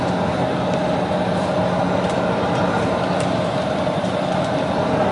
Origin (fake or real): real